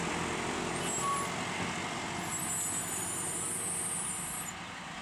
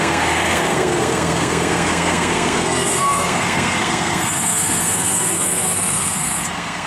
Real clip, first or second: first